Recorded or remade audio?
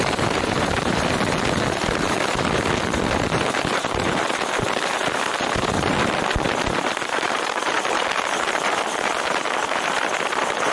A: remade